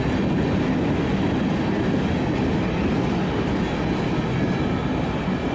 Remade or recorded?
recorded